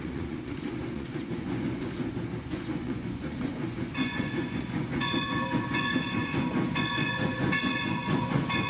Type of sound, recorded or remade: remade